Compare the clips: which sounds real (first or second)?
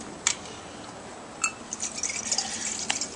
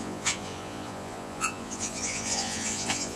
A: first